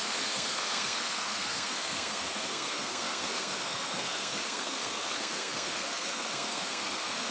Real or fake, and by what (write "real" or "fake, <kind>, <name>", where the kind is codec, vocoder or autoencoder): fake, codec, SNAC